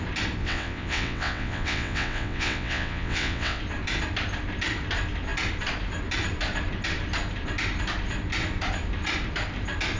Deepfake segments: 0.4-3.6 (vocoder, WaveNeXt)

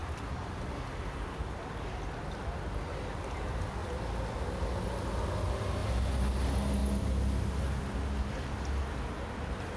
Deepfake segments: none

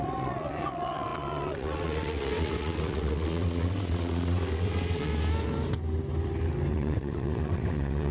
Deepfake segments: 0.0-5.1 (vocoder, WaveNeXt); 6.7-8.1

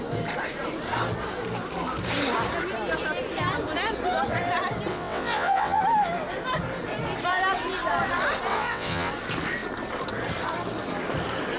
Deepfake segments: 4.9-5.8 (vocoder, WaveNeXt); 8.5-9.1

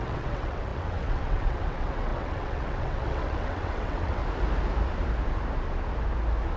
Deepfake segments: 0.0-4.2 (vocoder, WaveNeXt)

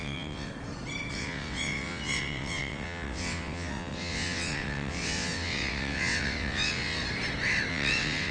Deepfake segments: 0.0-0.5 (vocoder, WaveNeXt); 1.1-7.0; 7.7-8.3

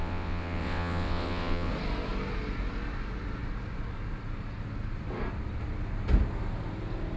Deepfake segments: 0.0-1.7 (vocoder, WaveNeXt)

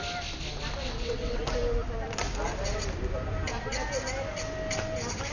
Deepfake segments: 0.8-1.4 (vocoder, WaveNeXt)